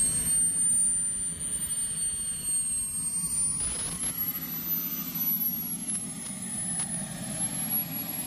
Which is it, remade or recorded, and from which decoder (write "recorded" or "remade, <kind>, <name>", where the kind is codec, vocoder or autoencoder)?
recorded